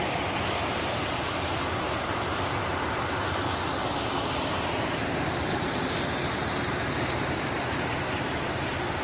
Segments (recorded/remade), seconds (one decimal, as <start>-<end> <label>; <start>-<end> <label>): 0.0-3.8 remade; 3.8-4.4 recorded; 4.4-9.0 remade